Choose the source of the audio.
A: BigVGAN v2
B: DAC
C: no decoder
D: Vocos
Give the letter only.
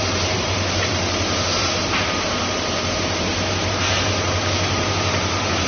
A